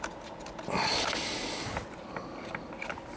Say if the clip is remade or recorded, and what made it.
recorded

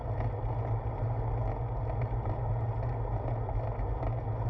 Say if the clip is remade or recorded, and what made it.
recorded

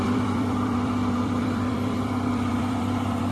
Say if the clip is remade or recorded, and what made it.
remade, vocoder, BigVGAN v2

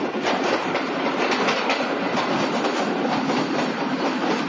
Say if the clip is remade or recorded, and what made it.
recorded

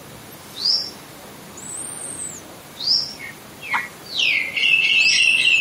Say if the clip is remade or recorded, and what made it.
recorded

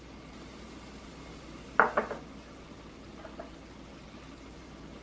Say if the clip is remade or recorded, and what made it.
recorded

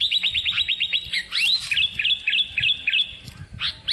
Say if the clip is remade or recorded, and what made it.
remade, vocoder, BigVGAN v2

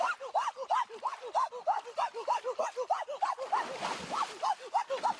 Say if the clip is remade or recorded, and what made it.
recorded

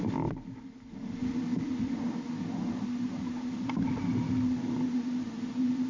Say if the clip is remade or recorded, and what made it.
recorded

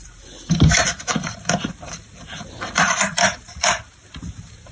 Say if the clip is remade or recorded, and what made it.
remade, vocoder, BigVGAN v2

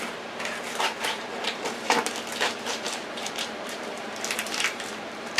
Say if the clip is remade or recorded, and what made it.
remade, vocoder, BigVGAN v2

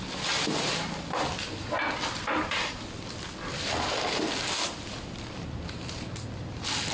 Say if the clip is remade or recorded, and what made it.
recorded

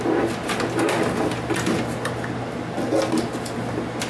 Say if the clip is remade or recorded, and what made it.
recorded